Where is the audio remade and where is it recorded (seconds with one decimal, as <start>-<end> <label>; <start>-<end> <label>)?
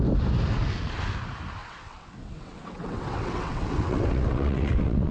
0.0-1.6 recorded; 1.6-5.1 remade